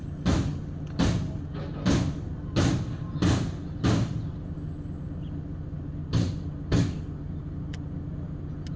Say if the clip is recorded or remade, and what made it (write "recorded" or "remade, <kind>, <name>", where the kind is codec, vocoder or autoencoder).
recorded